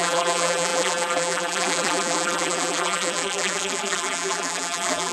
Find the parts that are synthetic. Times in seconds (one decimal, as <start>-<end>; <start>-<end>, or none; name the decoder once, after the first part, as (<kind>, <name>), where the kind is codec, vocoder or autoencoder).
0.0-5.1 (vocoder, BigVGAN v2)